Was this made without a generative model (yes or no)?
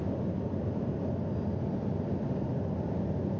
yes